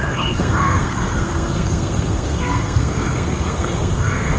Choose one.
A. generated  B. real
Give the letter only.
A